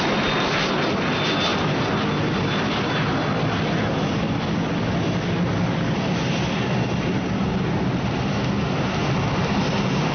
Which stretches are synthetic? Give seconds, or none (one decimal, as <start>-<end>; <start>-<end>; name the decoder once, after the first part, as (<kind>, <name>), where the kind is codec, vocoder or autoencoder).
none